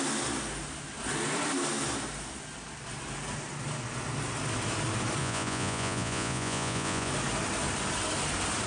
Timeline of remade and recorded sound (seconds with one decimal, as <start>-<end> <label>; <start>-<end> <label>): 0.0-5.2 recorded; 5.2-7.1 remade; 7.1-8.7 recorded